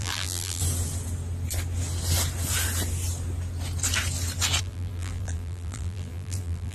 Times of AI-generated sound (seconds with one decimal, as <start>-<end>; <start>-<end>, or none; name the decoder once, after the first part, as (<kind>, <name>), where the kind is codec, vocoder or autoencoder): 0.0-0.6 (vocoder, BigVGAN v2); 4.6-6.7